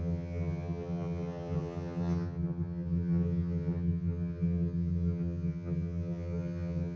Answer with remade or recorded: remade